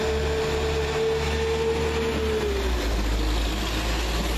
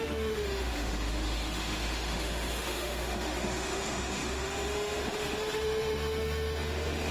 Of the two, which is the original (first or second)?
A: first